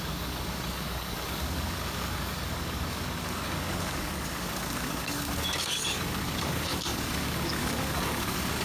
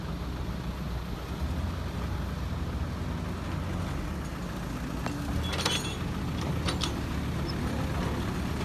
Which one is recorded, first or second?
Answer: second